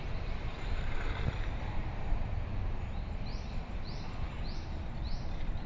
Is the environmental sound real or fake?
fake